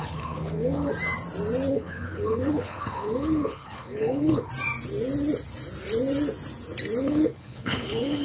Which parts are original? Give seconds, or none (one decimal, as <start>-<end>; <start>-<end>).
0.9-1.7; 4.5-7.0